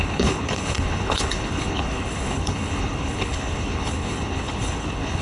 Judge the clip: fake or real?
fake